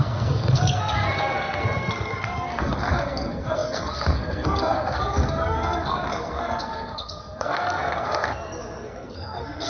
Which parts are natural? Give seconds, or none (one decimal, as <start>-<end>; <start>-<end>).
none